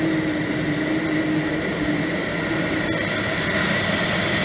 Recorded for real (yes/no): yes